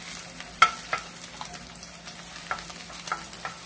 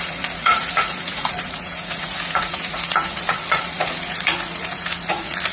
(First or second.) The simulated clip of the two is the second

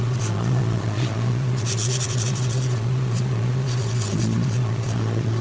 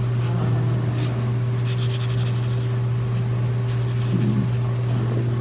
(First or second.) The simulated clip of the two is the first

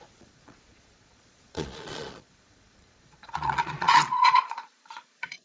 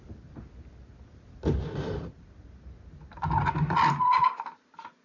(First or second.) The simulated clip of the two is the first